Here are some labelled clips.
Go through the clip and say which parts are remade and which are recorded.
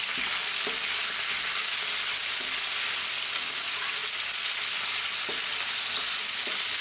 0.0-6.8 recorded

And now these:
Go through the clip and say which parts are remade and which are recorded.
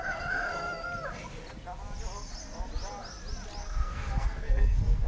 0.0-0.5 remade; 0.5-3.6 recorded; 3.6-5.1 remade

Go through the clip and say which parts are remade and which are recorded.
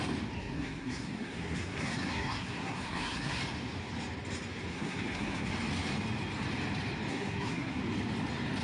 0.0-0.4 recorded; 0.4-3.4 remade; 3.4-4.7 recorded; 4.7-5.5 remade; 5.5-7.1 recorded; 7.1-7.8 remade; 7.8-8.6 recorded